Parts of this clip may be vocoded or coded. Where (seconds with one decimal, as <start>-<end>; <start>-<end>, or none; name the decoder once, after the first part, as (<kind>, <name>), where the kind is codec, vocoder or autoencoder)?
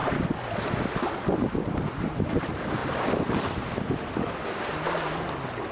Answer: none